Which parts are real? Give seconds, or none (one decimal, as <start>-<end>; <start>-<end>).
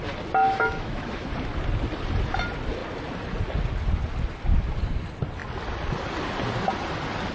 0.0-0.4; 1.3-7.3